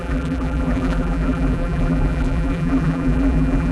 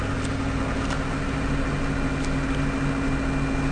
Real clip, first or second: second